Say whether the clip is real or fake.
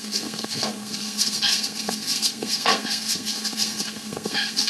fake